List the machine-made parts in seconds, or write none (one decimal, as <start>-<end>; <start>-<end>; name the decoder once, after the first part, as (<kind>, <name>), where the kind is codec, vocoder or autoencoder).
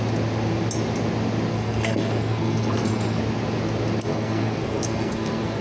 1.5-3.2 (codec, SNAC); 4.1-5.6